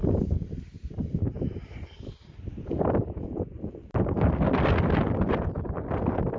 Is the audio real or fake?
real